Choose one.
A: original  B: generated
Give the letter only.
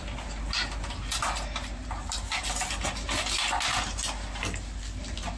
A